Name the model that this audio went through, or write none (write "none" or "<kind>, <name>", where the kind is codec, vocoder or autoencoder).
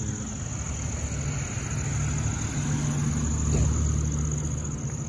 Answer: none